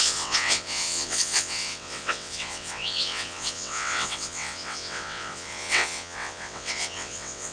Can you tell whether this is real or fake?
fake